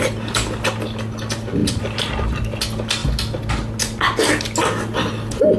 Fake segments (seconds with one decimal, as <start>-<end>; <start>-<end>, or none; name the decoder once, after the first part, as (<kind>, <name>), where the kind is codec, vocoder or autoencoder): 1.6-2.6 (vocoder, BigVGAN v2)